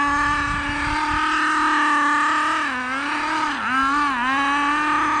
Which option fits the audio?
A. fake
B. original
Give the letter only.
B